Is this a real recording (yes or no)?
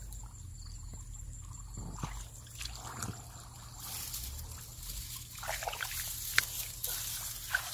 yes